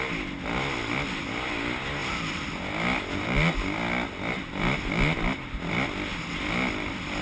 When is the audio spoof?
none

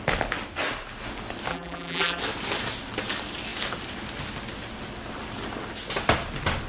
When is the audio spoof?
1.5-2.2 (vocoder, BigVGAN v2)